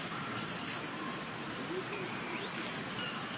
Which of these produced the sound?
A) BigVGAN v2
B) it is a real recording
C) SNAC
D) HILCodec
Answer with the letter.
B